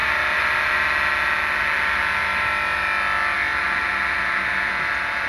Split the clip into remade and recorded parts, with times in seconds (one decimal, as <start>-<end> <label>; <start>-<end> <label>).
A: 0.0-5.3 recorded